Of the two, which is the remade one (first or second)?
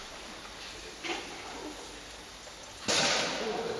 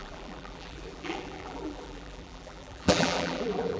second